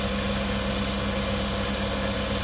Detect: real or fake real